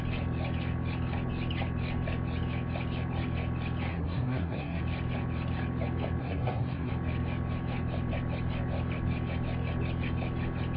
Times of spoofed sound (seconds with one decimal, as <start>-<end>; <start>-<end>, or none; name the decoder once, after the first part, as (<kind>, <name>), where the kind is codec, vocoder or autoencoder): 3.9-4.8 (codec, SNAC); 6.2-6.9